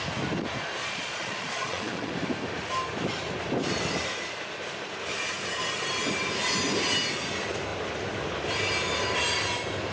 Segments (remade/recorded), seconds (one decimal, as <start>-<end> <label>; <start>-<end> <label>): 0.0-0.8 recorded; 0.8-2.1 remade; 2.1-9.9 recorded